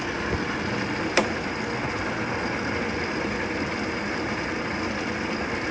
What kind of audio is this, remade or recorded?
recorded